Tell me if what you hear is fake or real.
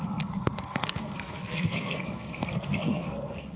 fake